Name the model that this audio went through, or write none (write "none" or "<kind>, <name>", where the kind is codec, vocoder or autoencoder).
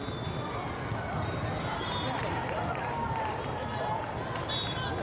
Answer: none